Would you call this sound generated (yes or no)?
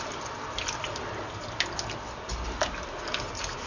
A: no